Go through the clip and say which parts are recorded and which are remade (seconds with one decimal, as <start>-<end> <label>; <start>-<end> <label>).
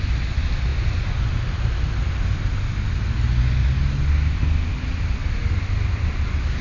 0.0-6.6 recorded